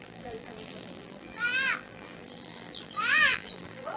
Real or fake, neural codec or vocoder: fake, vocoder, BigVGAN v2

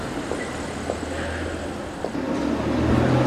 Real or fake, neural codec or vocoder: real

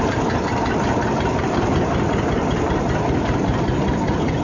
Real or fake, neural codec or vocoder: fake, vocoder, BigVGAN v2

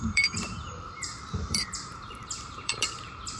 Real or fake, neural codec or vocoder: fake, vocoder, BigVGAN v2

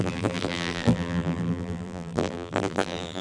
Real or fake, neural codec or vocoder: fake, vocoder, BigVGAN v2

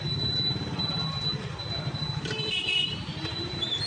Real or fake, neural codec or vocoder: fake, vocoder, BigVGAN v2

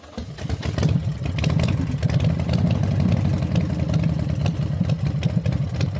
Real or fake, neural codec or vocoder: real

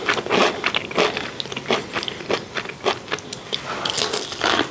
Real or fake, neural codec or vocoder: real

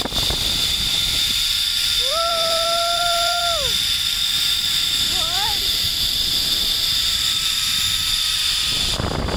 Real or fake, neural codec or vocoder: fake, vocoder, BigVGAN v2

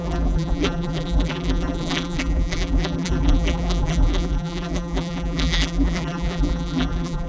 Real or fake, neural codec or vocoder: fake, vocoder, BigVGAN v2